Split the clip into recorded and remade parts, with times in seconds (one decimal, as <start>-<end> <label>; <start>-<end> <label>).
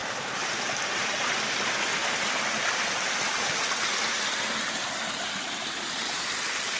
0.0-1.5 remade; 1.5-6.8 recorded